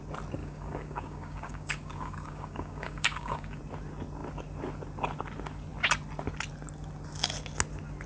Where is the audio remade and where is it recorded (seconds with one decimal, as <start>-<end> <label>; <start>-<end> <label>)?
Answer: 0.0-0.4 recorded; 0.4-3.6 remade; 3.6-8.1 recorded